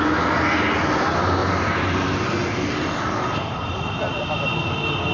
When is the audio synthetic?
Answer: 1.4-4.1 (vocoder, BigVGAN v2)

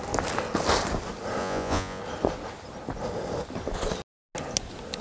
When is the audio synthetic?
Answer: 1.4-2.0 (vocoder, Vocos)

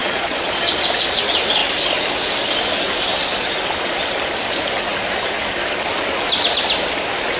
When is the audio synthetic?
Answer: 0.0-0.6 (vocoder, Vocos)

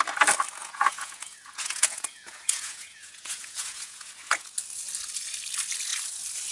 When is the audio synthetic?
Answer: 0.6-4.5 (vocoder, Vocos)